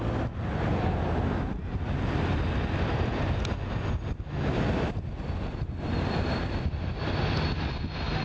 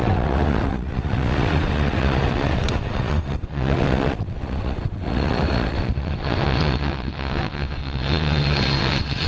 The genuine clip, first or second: first